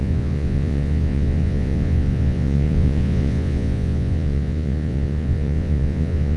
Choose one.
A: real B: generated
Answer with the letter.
B